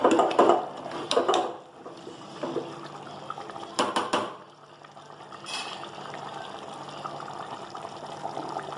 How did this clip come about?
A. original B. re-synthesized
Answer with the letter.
B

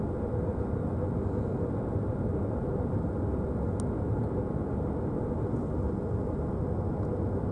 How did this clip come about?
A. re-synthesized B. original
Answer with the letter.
B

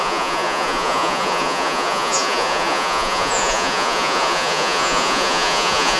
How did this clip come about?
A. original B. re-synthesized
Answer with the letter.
B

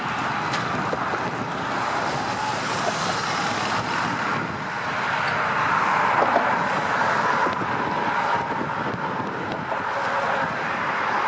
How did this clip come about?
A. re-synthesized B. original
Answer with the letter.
B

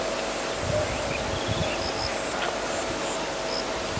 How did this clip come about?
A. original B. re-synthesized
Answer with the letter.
A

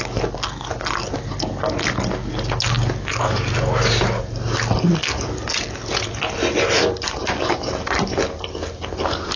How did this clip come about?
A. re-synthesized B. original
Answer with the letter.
B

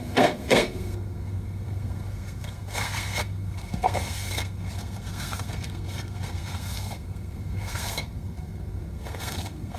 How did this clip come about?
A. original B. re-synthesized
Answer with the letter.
B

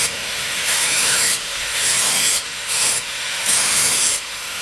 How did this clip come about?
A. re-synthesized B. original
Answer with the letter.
A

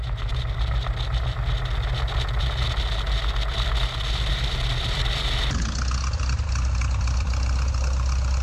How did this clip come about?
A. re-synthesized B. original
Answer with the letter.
B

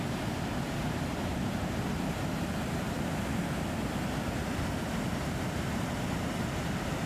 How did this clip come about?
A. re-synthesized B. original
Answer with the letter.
B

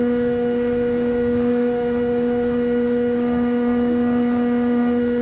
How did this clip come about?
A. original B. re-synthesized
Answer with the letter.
B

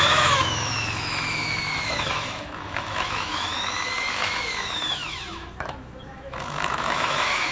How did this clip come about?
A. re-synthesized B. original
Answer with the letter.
A